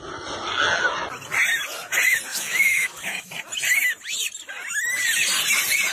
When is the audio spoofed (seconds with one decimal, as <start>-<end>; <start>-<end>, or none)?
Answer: 2.3-3.3